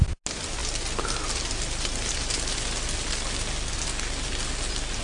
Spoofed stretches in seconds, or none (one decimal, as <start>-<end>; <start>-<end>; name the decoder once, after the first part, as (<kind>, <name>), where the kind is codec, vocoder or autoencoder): none